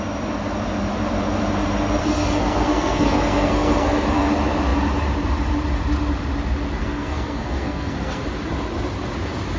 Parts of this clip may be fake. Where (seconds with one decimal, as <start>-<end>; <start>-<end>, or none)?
2.0-4.3; 6.8-8.2